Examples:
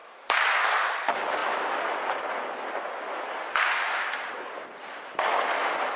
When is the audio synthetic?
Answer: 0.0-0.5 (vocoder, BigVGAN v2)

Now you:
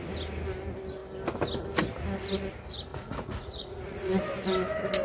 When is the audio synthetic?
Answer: 2.9-4.2 (vocoder, Vocos)

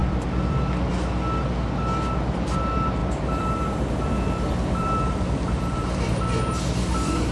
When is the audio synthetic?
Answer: 0.0-0.9 (vocoder, BigVGAN v2); 3.0-7.3

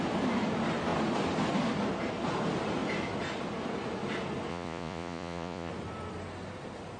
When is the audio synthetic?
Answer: 4.5-5.7 (vocoder, Vocos)

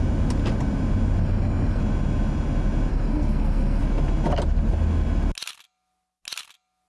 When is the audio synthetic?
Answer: 1.2-1.8 (codec, SNAC); 2.9-3.8